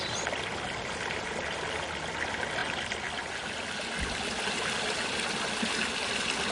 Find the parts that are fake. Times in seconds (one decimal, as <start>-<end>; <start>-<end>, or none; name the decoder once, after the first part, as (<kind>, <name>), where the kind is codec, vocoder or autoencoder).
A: none